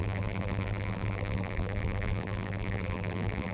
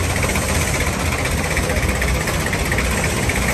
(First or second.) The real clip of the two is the second